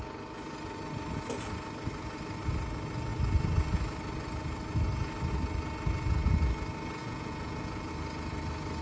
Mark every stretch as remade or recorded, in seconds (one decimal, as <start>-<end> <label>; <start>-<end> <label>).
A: 0.0-7.0 recorded; 7.0-7.9 remade; 7.9-8.8 recorded